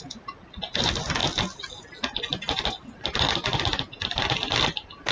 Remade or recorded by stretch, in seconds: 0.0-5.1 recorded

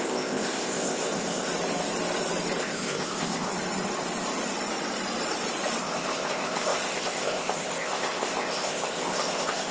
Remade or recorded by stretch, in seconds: 0.0-1.5 remade; 1.5-2.6 recorded; 2.6-3.5 remade; 3.5-5.8 recorded; 5.8-9.7 remade

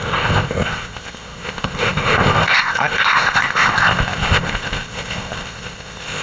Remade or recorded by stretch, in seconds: 0.0-6.2 remade

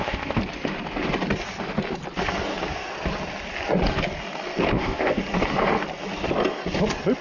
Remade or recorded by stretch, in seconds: 0.0-0.4 remade; 0.4-4.7 recorded; 4.7-5.2 remade; 5.2-7.2 recorded

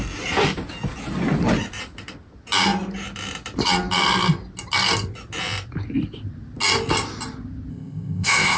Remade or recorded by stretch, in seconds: 0.0-7.7 recorded; 7.7-8.6 remade

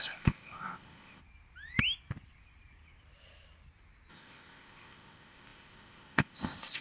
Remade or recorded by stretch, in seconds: 0.0-1.2 remade; 1.2-4.1 recorded; 4.1-6.8 remade

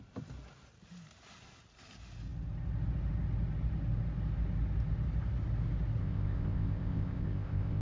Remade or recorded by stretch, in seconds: 0.0-6.0 recorded; 6.0-7.8 remade

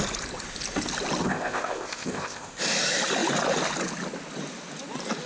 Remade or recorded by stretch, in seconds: 0.0-1.2 recorded; 1.2-2.6 remade; 2.6-5.3 recorded